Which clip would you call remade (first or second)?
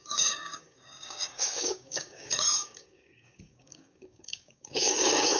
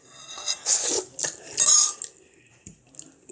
first